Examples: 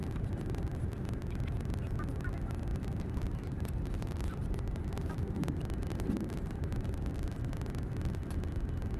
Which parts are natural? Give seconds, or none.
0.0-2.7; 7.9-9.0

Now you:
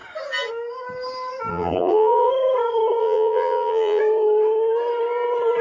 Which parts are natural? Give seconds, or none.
0.0-1.5; 2.3-3.0; 4.0-5.6